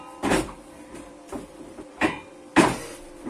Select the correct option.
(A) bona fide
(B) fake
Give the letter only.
B